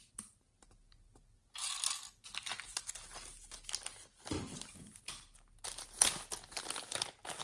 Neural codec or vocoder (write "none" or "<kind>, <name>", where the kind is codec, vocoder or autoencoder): none